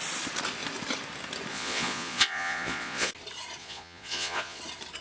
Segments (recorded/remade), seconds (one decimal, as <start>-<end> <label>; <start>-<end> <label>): 0.0-1.5 recorded; 1.5-3.1 remade; 3.1-3.6 recorded; 3.6-4.6 remade; 4.6-5.0 recorded